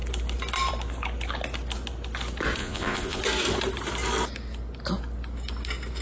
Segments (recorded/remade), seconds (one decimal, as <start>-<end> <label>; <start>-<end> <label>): 0.0-2.6 recorded; 2.6-3.2 remade; 3.2-6.0 recorded